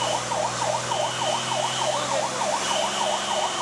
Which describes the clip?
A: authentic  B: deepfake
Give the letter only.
A